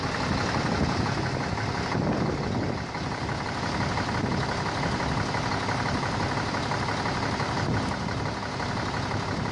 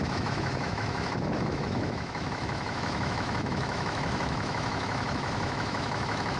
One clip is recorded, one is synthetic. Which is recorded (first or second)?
first